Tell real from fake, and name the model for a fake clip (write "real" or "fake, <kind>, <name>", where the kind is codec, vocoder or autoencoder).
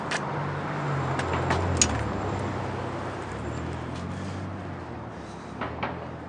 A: real